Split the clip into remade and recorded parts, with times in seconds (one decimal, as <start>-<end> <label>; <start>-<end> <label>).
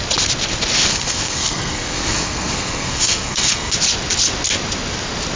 0.0-0.9 recorded; 0.9-3.7 remade; 3.7-5.4 recorded